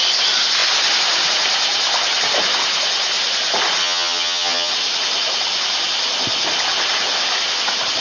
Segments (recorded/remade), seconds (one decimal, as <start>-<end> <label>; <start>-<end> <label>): 0.0-3.8 recorded; 3.8-4.7 remade; 4.7-8.0 recorded